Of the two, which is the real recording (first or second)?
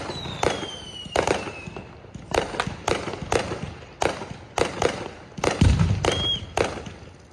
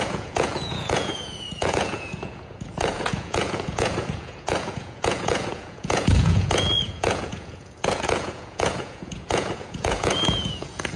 first